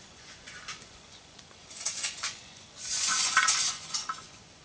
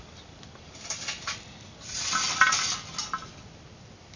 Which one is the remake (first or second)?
first